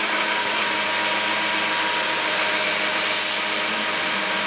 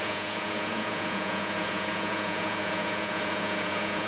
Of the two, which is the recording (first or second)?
first